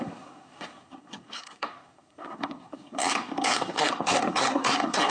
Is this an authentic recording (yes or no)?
no